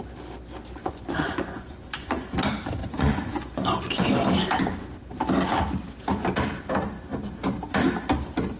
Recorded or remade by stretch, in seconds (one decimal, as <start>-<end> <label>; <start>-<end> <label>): 0.0-0.8 recorded; 0.8-2.3 remade; 2.3-2.8 recorded; 2.8-4.1 remade; 4.1-8.6 recorded